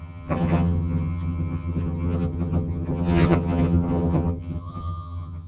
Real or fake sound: fake